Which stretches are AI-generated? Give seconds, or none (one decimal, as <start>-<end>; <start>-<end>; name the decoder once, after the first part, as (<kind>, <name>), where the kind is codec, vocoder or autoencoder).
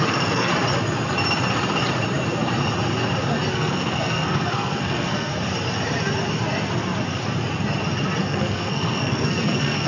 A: 0.0-0.5 (codec, SNAC); 3.5-5.3; 8.2-9.9